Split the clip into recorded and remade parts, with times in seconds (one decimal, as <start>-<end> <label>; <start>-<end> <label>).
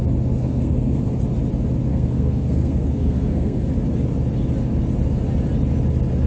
0.0-0.4 recorded; 0.4-1.0 remade; 1.0-1.9 recorded; 1.9-3.7 remade; 3.7-6.3 recorded